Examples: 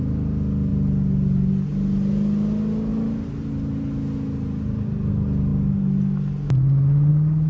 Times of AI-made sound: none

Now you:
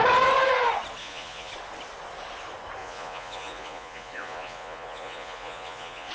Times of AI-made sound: 1.0-1.5 (vocoder, Vocos); 2.8-6.1